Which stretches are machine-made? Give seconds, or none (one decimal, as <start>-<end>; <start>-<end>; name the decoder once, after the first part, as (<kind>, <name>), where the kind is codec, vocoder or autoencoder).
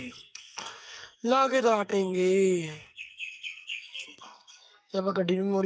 0.0-5.7 (codec, SNAC)